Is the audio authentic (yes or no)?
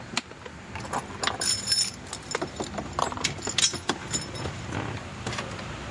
yes